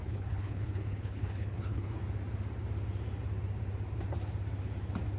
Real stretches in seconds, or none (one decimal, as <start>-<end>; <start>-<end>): 2.0-5.2